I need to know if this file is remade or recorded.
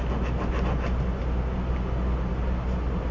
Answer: recorded